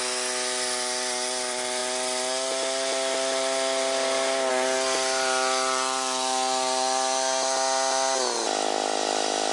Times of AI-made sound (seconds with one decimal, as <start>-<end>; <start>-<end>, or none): none